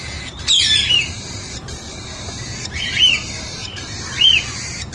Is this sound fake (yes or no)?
no